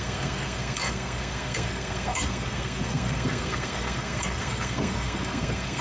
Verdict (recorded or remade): remade